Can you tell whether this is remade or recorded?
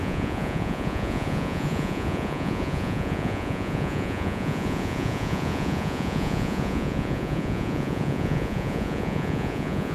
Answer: remade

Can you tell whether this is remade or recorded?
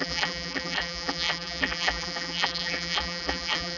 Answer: remade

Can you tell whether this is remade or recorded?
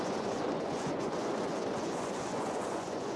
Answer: remade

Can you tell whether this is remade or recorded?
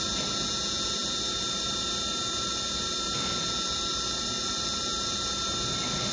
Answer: recorded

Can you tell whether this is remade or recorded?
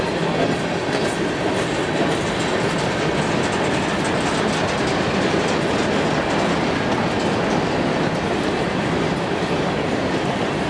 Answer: recorded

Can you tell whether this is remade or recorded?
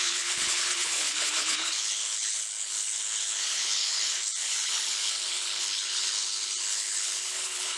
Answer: remade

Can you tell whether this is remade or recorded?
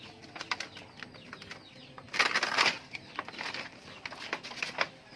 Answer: recorded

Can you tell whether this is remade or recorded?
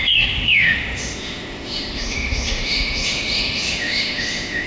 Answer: remade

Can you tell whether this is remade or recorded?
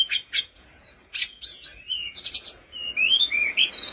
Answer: remade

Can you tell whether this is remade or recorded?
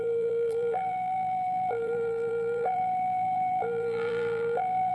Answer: remade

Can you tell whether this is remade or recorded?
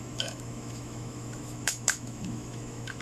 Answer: remade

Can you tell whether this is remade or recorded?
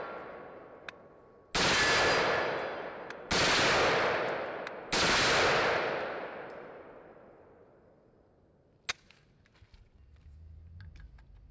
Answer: recorded